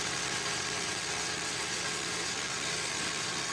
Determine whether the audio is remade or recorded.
remade